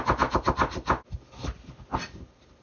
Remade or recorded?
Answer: recorded